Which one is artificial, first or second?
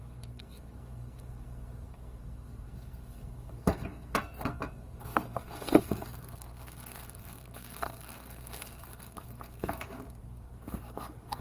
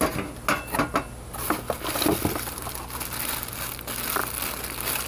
first